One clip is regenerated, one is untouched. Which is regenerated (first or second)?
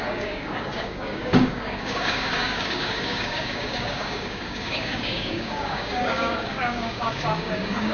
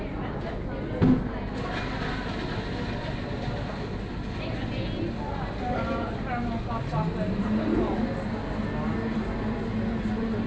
first